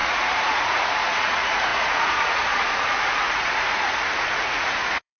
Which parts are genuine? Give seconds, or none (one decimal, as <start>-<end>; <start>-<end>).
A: none